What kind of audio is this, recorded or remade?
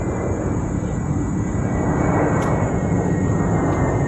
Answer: remade